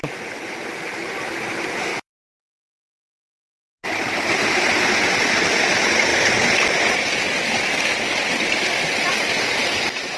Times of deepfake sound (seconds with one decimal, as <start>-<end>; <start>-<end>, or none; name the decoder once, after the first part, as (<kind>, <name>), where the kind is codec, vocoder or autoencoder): 1.9-2.6 (autoencoder, DAC-VAE)